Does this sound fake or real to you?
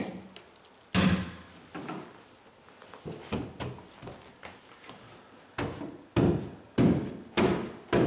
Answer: real